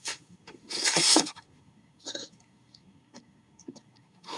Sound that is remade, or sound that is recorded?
remade